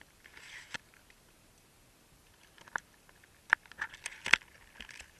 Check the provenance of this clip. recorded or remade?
recorded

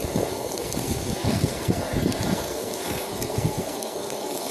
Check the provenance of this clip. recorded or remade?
remade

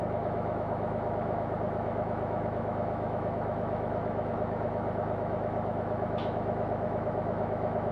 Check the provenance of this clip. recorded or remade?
remade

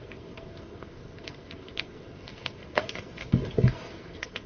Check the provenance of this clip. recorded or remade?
remade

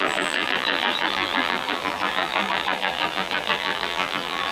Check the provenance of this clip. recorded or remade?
remade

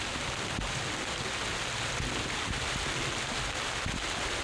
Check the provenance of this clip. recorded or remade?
recorded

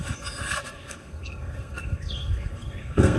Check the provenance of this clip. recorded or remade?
remade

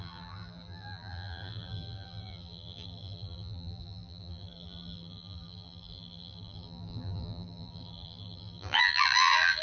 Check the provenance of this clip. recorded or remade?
remade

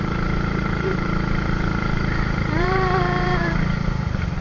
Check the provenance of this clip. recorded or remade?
remade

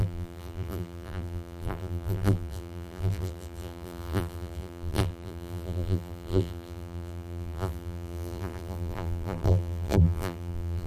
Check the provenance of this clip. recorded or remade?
remade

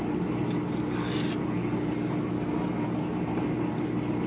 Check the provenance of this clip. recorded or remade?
recorded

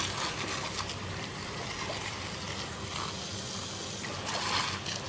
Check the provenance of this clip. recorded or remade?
recorded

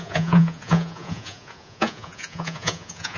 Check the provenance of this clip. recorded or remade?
remade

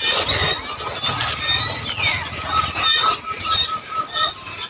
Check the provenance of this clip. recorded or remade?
recorded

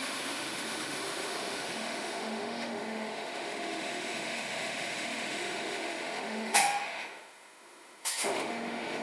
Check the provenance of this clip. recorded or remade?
remade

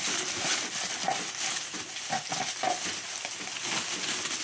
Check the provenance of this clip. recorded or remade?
recorded